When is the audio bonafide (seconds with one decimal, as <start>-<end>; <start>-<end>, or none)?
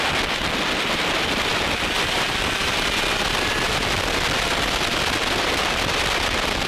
0.0-6.7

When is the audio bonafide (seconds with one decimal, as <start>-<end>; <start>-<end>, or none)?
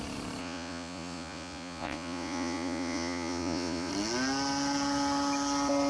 0.0-0.4; 3.9-5.9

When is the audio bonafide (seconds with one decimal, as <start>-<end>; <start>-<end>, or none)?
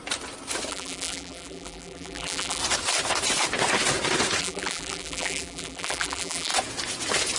0.0-0.7; 2.6-4.4; 6.5-7.4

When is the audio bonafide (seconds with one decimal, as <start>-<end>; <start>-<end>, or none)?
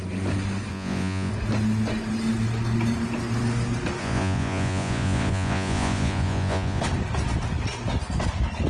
0.0-0.7; 1.3-4.0; 6.8-8.7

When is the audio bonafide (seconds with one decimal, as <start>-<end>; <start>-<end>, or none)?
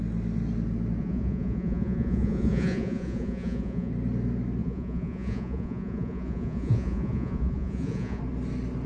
0.0-1.0; 3.9-4.6; 8.2-8.9